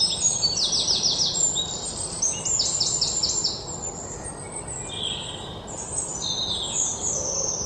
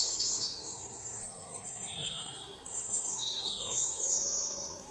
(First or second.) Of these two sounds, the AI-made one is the second